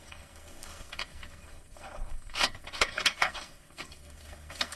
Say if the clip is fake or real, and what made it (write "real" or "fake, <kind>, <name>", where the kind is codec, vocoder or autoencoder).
fake, codec, SNAC